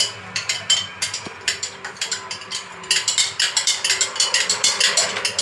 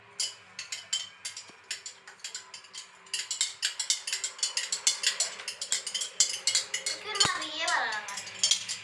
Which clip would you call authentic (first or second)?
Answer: second